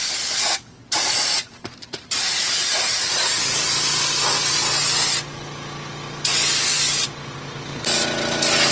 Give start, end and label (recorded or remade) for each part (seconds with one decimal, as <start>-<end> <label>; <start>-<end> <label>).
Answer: 0.0-0.8 recorded; 0.8-4.2 remade; 4.2-8.7 recorded